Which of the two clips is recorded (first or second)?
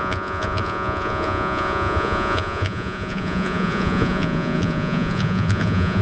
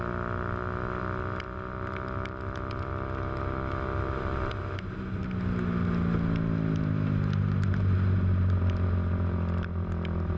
second